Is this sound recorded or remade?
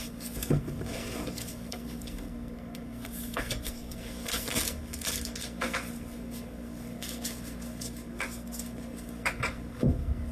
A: remade